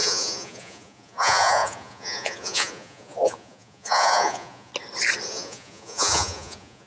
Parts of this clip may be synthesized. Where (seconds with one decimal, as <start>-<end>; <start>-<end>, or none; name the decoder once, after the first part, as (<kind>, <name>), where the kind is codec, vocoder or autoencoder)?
0.0-4.7 (vocoder, Vocos); 5.3-6.9